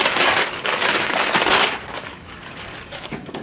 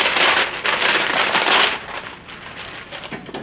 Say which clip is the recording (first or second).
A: second